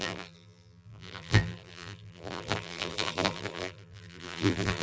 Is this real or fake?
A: fake